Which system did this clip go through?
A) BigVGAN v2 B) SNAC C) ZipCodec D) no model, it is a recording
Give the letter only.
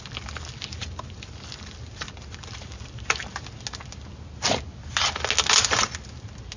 D